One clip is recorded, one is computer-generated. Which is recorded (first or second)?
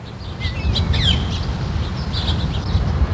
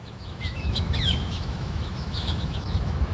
first